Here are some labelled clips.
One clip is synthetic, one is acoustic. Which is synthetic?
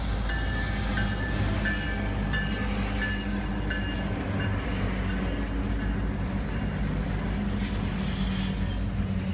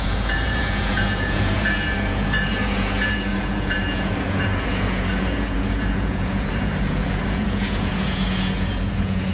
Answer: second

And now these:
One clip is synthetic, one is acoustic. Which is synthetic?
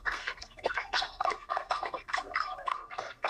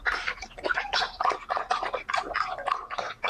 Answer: first